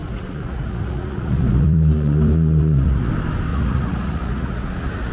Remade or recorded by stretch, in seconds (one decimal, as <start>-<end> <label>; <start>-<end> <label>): 0.0-3.1 remade; 3.1-3.5 recorded; 3.5-5.1 remade